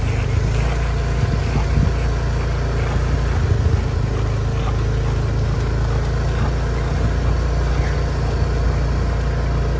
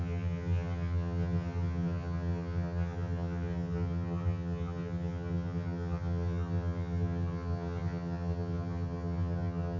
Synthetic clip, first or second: second